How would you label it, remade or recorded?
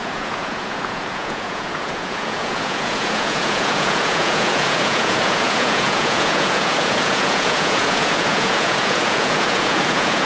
remade